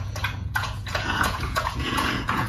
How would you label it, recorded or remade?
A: remade